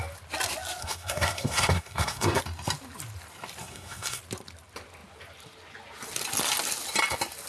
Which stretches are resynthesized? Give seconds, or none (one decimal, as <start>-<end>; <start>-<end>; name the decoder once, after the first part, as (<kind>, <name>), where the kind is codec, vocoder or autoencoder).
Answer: 0.8-2.4 (codec, SNAC); 3.6-4.2